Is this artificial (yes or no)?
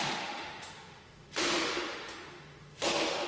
yes